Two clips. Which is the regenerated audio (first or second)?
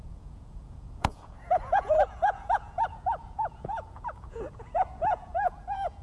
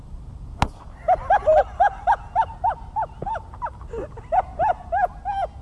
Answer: first